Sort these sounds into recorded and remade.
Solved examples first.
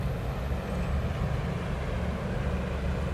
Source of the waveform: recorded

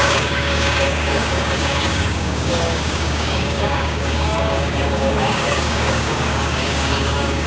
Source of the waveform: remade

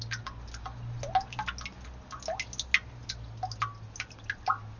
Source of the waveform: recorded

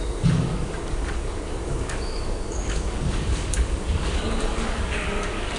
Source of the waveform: remade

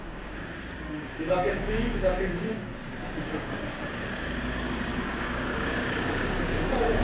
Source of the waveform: remade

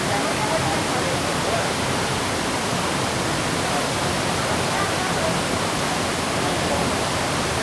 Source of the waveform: recorded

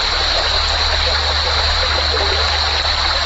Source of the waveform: recorded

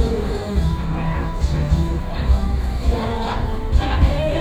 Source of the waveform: remade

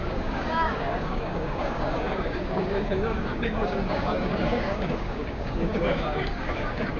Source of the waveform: remade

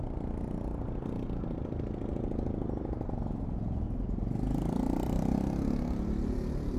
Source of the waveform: recorded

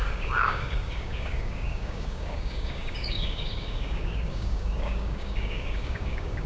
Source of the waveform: remade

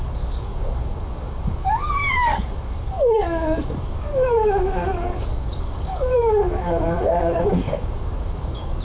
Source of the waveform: remade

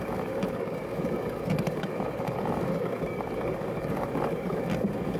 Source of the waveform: remade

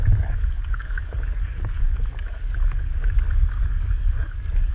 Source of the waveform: remade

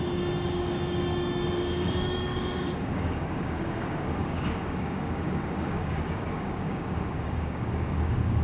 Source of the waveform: remade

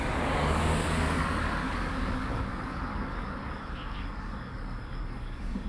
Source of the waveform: remade